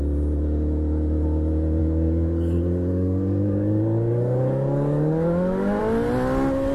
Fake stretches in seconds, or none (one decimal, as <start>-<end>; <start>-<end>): 1.8-5.8